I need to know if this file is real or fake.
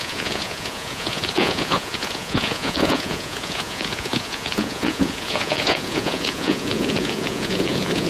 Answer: fake